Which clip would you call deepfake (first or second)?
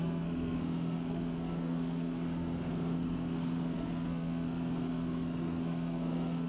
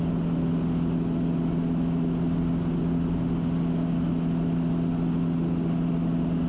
first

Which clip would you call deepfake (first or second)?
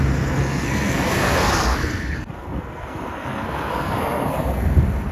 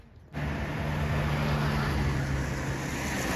first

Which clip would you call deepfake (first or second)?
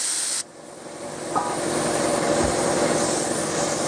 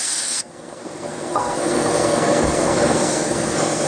second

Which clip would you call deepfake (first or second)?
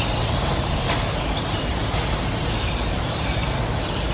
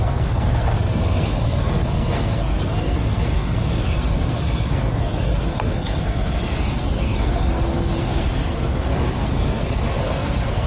second